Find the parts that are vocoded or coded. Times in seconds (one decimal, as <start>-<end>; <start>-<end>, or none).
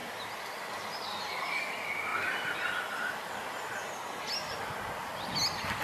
none